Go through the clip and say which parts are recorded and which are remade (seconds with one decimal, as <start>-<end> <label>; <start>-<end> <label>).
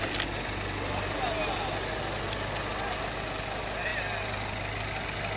0.0-5.4 recorded